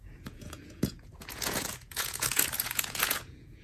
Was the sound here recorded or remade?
remade